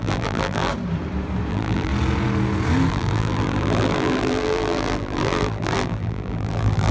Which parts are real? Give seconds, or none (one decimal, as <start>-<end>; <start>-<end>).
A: 0.7-1.5; 1.9-2.9